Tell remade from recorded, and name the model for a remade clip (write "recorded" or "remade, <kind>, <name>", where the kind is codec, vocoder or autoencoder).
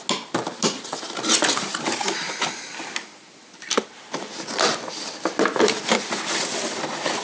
recorded